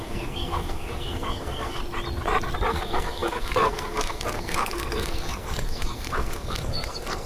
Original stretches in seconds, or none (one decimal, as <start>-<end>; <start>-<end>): 1.8-2.7